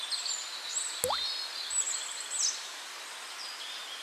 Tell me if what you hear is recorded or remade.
recorded